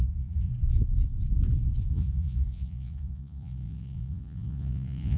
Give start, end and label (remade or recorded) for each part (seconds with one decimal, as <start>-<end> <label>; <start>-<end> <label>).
0.0-0.5 remade; 0.5-1.9 recorded; 1.9-5.2 remade